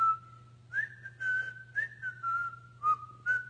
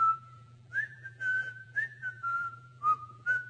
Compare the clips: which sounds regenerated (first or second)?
second